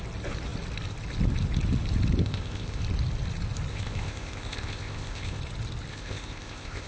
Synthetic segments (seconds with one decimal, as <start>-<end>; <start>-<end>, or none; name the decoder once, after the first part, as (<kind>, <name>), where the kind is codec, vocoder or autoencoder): 2.2-2.8 (codec, ZipCodec); 3.7-5.4; 5.9-6.9